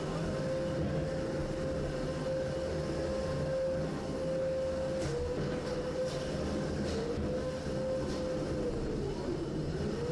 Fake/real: real